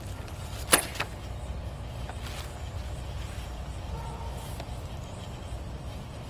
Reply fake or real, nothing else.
real